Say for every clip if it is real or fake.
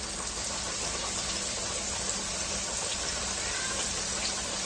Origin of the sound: real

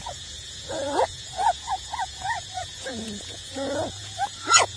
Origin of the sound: fake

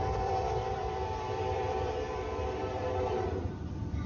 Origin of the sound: fake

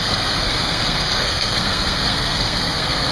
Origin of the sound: fake